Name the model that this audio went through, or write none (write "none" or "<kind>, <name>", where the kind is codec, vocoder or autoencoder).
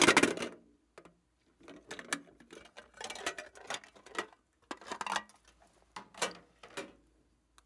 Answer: none